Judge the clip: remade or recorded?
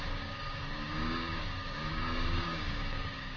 remade